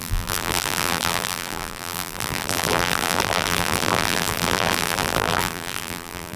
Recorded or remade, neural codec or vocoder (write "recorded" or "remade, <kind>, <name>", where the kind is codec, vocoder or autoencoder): remade, vocoder, BigVGAN v2